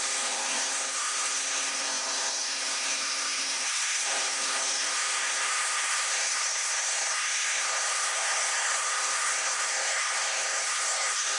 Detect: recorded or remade remade